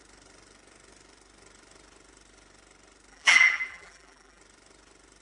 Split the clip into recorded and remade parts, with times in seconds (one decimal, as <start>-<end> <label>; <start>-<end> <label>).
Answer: 0.0-3.1 recorded; 3.1-4.4 remade; 4.4-5.2 recorded

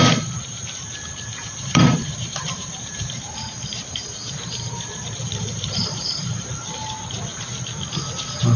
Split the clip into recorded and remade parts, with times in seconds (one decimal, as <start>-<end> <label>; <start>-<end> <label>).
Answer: 0.0-1.3 recorded; 1.3-6.5 remade; 6.5-8.6 recorded